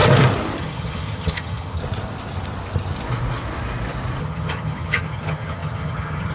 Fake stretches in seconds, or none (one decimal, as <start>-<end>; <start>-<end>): 0.6-1.8; 4.2-6.3